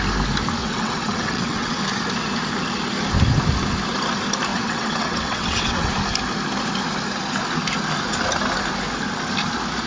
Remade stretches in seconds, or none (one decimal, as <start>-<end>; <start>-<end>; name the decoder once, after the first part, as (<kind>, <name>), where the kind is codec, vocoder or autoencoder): 0.6-1.8 (vocoder, WaveNeXt); 4.5-5.9